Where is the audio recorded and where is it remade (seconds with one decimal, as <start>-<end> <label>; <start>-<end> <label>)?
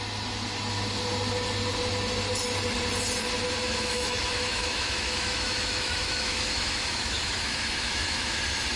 0.0-3.6 recorded; 3.6-8.4 remade; 8.4-8.8 recorded